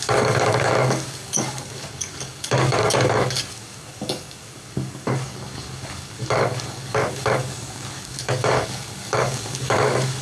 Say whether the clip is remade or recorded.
remade